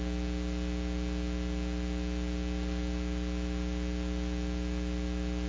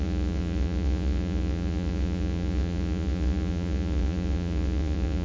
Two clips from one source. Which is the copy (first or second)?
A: second